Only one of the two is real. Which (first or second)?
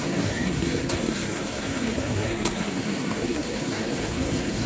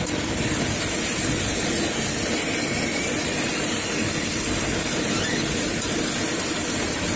second